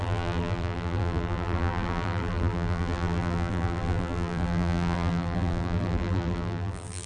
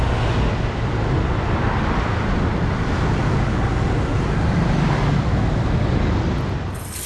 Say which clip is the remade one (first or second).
first